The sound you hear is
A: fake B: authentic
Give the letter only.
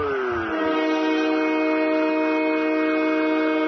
B